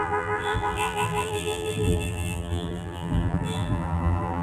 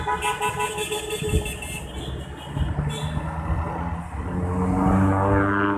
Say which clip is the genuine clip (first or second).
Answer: second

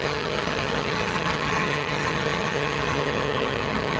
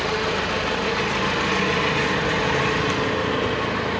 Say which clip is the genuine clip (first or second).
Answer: second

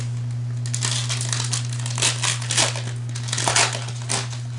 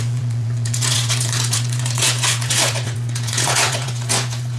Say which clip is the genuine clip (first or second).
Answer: first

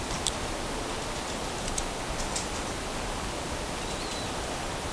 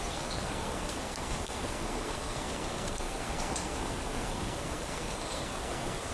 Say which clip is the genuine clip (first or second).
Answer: first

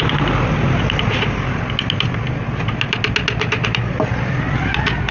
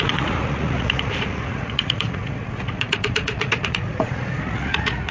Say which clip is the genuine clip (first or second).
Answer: first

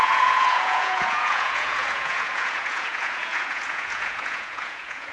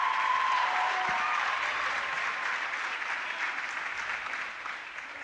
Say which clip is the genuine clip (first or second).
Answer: second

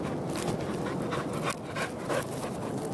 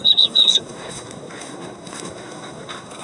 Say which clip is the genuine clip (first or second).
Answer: first